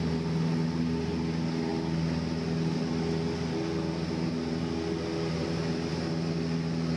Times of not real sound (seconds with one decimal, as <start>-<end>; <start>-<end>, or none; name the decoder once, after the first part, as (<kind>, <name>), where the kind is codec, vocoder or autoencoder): none